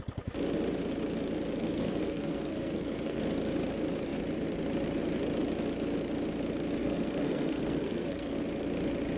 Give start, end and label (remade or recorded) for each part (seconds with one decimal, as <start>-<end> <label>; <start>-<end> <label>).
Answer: 0.0-1.6 recorded; 1.6-3.2 remade; 3.2-6.8 recorded; 6.8-8.3 remade; 8.3-9.2 recorded